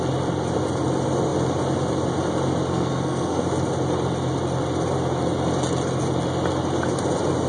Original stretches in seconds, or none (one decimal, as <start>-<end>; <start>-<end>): 0.0-2.7; 3.4-7.5